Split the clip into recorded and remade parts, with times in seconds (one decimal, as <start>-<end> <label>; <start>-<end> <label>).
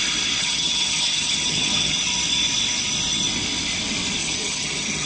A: 0.0-0.4 recorded; 0.4-2.0 remade; 2.0-4.2 recorded; 4.2-5.1 remade